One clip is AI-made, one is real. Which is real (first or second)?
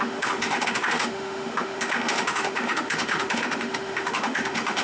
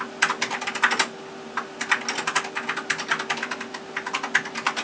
second